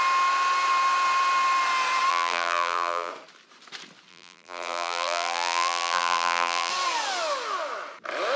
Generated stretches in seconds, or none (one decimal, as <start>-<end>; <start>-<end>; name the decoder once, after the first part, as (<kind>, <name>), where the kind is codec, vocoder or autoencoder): 2.1-3.1 (vocoder, BigVGAN v2); 4.1-6.7